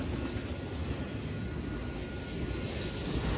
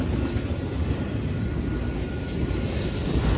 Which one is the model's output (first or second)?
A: second